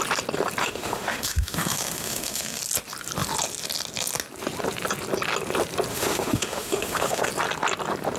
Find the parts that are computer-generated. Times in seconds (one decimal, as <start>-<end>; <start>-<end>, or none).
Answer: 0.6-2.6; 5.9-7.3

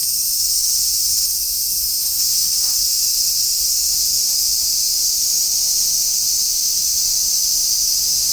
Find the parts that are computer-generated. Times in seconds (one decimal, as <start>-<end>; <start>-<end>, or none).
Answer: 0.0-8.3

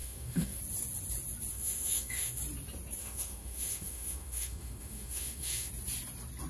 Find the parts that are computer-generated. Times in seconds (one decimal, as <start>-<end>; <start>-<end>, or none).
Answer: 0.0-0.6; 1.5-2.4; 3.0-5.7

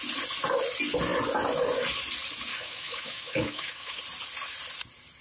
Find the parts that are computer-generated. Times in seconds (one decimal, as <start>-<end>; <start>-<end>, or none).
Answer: 2.5-4.0